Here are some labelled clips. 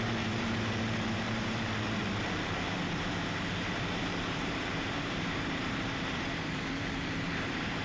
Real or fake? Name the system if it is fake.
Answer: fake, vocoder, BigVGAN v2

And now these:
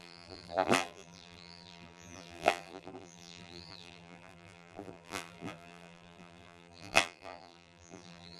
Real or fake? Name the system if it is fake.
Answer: fake, vocoder, BigVGAN v2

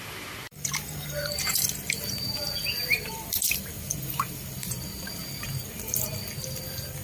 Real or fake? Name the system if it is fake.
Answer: fake, vocoder, BigVGAN v2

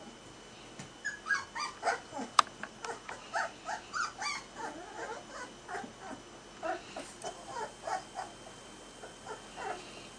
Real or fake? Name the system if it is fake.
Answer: real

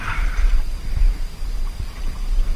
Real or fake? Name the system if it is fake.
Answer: fake, vocoder, BigVGAN v2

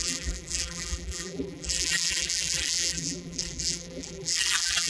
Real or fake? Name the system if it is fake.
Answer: fake, vocoder, BigVGAN v2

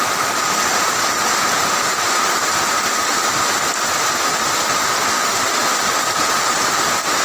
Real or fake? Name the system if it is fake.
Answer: real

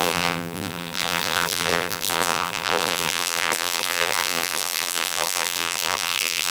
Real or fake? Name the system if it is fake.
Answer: fake, vocoder, BigVGAN v2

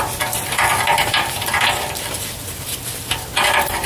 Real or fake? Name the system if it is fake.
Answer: fake, vocoder, BigVGAN v2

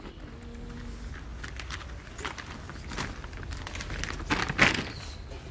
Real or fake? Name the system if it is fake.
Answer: real